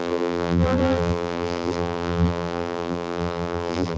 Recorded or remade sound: remade